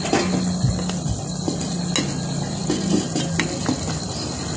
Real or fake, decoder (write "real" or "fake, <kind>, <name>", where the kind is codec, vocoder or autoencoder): real